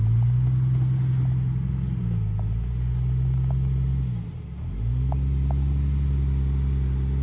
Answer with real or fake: real